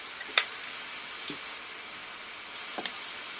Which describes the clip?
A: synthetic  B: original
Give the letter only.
A